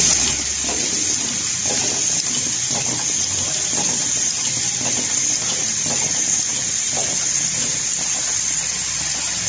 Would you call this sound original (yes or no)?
yes